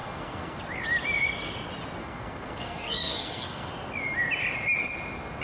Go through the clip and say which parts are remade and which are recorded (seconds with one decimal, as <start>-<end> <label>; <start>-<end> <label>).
0.0-0.6 remade; 0.6-2.0 recorded; 2.0-3.7 remade; 3.7-5.4 recorded